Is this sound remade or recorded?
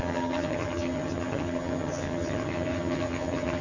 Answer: remade